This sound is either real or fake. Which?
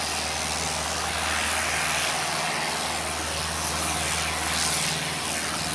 real